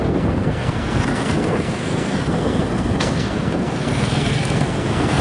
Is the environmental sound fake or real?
fake